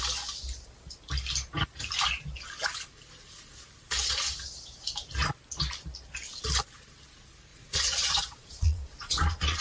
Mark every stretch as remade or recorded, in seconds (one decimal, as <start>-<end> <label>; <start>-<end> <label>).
0.0-7.5 recorded; 7.5-9.6 remade

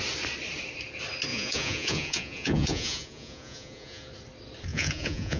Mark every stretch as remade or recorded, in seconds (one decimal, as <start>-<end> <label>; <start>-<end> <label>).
0.0-1.3 recorded; 1.3-4.1 remade; 4.1-4.7 recorded; 4.7-5.4 remade

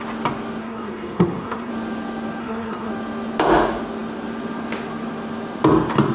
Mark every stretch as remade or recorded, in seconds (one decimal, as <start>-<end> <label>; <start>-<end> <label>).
0.0-0.6 recorded; 0.6-1.7 remade; 1.7-2.4 recorded; 2.4-2.9 remade; 2.9-6.1 recorded